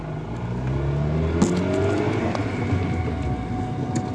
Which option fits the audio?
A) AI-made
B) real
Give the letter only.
B